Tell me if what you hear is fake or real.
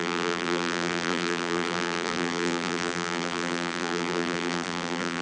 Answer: fake